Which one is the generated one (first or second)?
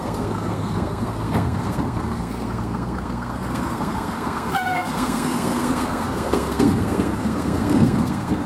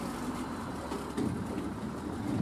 first